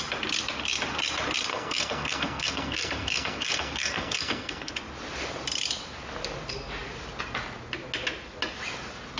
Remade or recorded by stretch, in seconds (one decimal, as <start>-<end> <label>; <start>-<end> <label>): 0.0-1.5 recorded; 1.5-4.7 remade; 4.7-9.2 recorded